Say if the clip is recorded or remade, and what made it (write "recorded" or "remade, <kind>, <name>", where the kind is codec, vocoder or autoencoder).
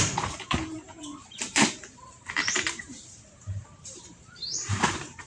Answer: remade, vocoder, BigVGAN v2